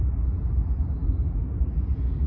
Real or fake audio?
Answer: fake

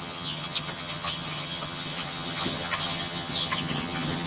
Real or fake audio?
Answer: fake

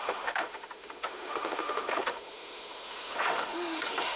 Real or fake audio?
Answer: fake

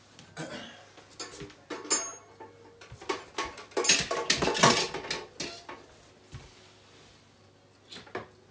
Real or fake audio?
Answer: real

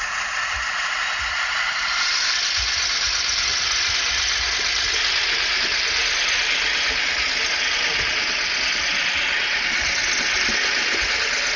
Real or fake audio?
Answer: real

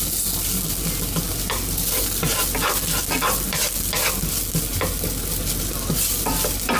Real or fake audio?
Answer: real